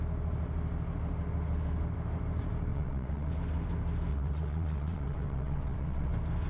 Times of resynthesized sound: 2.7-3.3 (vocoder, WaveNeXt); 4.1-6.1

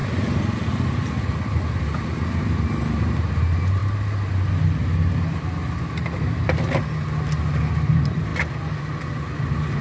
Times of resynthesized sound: none

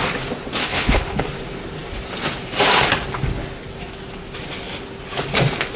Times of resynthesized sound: 0.6-1.2 (codec, HILCodec)

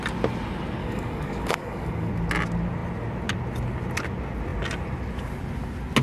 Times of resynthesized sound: 0.8-2.1 (codec, DAC)

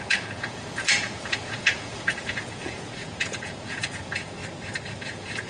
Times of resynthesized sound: 0.0-4.4 (vocoder, Vocos); 5.0-5.5

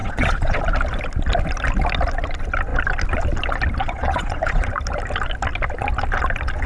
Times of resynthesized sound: 0.0-0.6 (vocoder, Vocos); 3.8-4.7